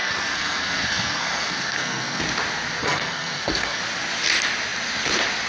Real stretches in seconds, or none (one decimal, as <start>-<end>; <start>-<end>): 2.2-2.8; 3.8-5.5